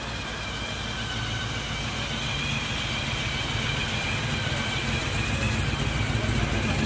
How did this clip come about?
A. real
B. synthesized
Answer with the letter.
A